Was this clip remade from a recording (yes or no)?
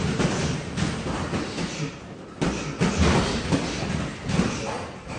no